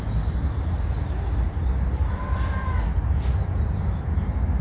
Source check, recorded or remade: recorded